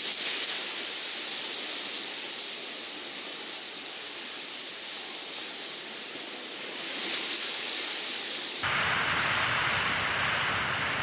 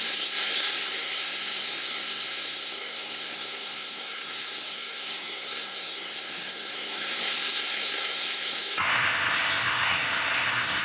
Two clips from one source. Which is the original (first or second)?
first